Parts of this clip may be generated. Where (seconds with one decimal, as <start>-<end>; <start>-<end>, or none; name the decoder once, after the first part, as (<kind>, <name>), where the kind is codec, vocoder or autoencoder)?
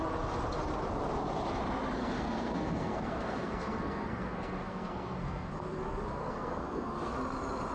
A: 2.0-5.5 (codec, SNAC); 6.2-7.1